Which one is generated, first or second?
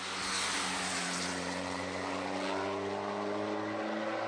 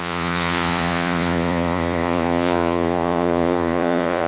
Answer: second